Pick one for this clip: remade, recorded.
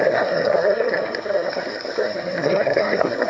remade